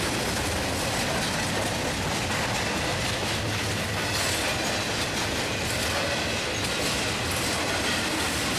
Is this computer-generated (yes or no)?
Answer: no